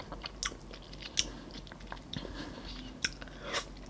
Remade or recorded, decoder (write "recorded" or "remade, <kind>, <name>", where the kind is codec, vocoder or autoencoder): recorded